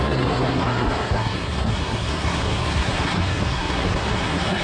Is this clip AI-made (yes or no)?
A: yes